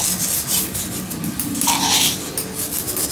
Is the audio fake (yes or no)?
no